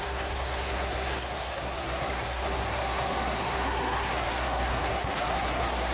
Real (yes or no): no